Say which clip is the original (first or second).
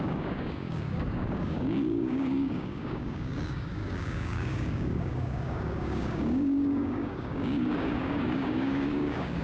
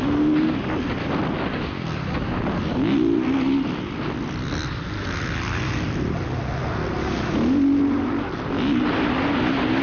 second